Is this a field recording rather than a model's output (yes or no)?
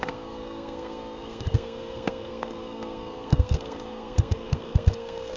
no